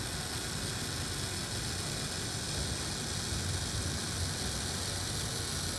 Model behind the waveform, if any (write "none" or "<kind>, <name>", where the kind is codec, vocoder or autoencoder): none